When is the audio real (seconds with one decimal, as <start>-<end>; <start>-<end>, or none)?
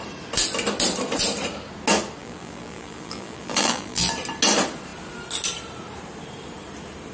0.0-2.2; 4.1-7.1